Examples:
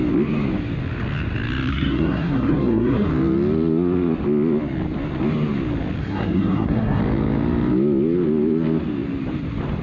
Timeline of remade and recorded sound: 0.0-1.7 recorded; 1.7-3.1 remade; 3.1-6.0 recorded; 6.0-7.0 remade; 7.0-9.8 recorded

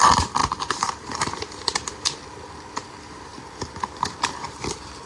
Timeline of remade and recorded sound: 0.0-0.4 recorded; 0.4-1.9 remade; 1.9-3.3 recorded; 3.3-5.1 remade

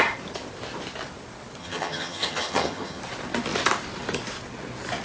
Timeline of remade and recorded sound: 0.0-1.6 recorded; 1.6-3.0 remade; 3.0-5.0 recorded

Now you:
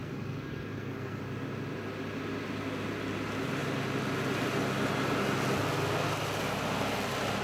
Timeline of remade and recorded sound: 0.0-1.2 remade; 1.2-7.4 recorded